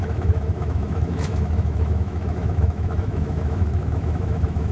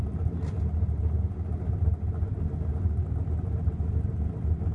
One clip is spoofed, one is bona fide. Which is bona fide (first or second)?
second